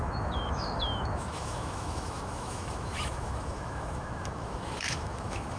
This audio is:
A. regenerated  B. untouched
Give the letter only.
A